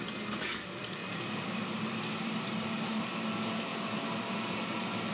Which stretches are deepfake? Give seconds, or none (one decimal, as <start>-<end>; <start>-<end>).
0.5-3.1; 3.7-5.1